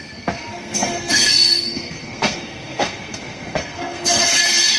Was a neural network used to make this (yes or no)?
yes